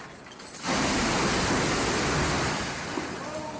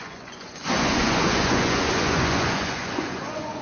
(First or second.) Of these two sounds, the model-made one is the second